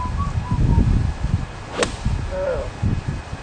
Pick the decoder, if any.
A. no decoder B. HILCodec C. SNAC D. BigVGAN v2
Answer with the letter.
A